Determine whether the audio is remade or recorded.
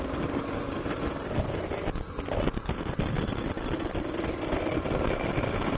recorded